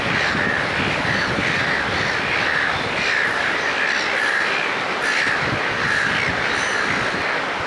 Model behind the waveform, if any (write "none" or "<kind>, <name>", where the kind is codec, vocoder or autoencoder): none